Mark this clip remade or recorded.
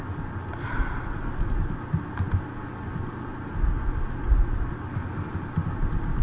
recorded